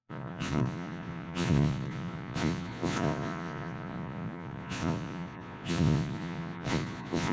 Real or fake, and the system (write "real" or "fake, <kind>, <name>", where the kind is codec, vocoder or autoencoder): fake, vocoder, Vocos